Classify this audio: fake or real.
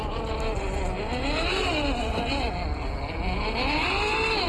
real